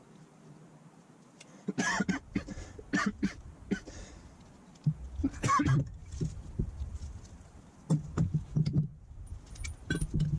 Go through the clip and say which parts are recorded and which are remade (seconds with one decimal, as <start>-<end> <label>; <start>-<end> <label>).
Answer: 0.0-6.0 recorded; 6.0-7.2 remade; 7.2-10.4 recorded